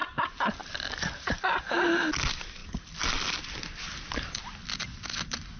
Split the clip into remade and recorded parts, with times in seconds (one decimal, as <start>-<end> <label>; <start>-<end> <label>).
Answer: 0.0-5.6 recorded